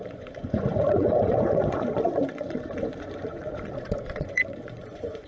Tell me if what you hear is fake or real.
fake